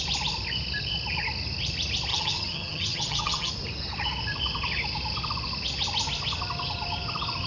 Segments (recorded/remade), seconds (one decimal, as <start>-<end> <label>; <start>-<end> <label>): 0.0-2.1 recorded; 2.1-3.5 remade; 3.5-7.5 recorded